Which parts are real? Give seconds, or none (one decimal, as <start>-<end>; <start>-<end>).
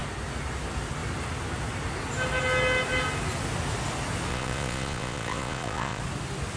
0.0-4.3; 6.0-6.6